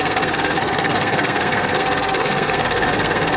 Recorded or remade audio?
remade